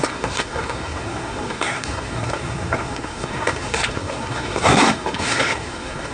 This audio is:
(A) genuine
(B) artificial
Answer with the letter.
B